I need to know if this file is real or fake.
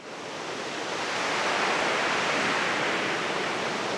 real